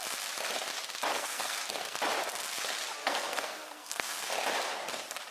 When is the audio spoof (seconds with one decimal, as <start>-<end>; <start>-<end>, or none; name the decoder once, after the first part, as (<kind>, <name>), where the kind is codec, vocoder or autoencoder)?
1.1-2.0 (codec, SNAC); 3.0-4.3